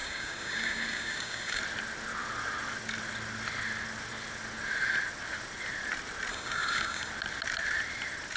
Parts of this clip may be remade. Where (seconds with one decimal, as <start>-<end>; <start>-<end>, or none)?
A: 0.0-1.6; 6.3-7.1